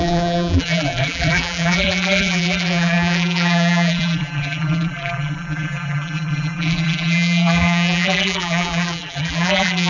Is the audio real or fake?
fake